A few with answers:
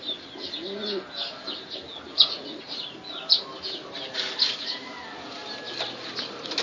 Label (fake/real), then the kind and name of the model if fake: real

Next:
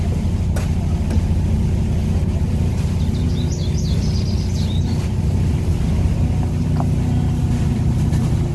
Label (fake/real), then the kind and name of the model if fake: real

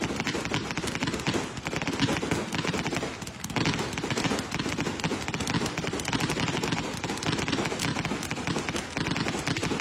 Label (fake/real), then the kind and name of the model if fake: real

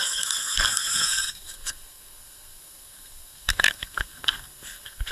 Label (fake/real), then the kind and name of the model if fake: fake, codec, SNAC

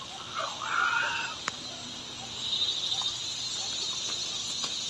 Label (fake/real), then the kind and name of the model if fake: real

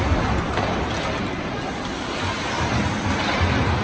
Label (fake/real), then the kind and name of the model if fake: real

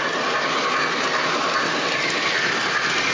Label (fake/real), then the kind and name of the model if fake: real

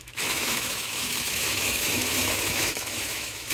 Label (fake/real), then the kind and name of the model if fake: fake, autoencoder, DAC-VAE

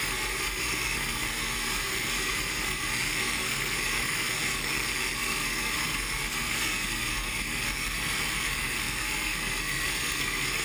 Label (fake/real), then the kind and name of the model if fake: fake, codec, SNAC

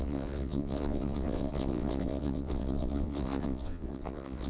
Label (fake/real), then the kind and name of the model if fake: fake, vocoder, WaveNeXt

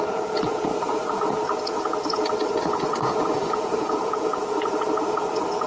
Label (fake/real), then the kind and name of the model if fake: fake, vocoder, Vocos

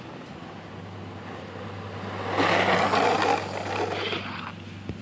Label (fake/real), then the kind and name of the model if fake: real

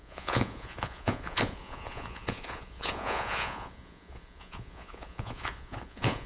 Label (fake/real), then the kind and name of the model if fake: fake, vocoder, Vocos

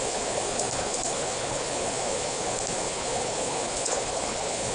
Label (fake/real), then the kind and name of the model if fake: fake, codec, HILCodec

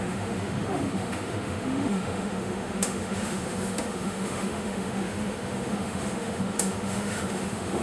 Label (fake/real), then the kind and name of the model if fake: fake, autoencoder, DAC-VAE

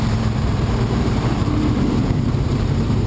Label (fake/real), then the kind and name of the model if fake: fake, vocoder, BigVGAN v2